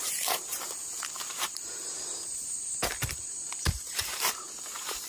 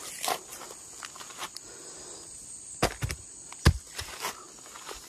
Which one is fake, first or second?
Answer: first